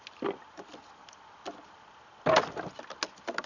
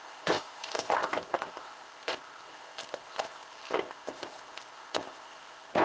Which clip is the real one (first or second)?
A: first